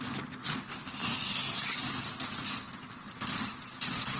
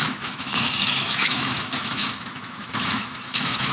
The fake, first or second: second